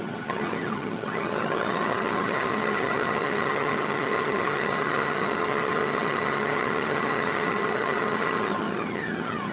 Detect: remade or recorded remade